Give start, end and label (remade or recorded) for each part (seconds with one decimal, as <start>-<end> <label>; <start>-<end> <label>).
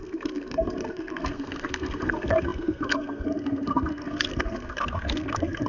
0.0-5.7 remade